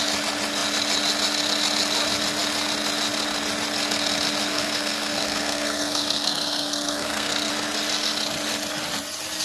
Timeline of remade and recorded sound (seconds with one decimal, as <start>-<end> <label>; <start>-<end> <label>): 0.0-4.5 recorded; 4.5-7.5 remade; 7.5-9.4 recorded